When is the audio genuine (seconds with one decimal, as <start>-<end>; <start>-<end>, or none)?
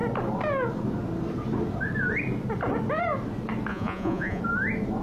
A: 0.0-3.7; 4.4-5.0